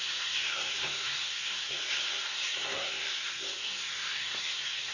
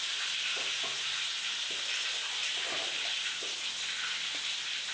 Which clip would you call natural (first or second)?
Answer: second